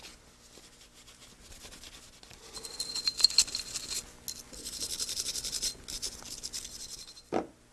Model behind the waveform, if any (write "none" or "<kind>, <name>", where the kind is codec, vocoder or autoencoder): none